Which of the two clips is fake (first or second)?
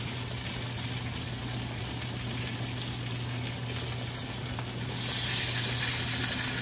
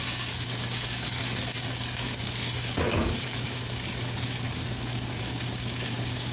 second